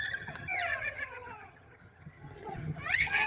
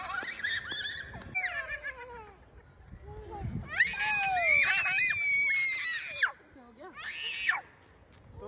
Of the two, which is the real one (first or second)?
second